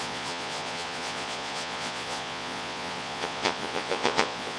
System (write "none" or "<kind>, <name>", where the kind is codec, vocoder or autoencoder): vocoder, Vocos